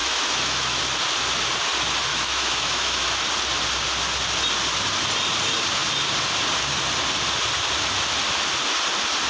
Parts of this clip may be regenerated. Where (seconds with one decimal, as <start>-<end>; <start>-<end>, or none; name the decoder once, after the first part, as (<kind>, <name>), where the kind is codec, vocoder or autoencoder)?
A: 0.0-0.8 (autoencoder, DAC-VAE); 2.1-3.1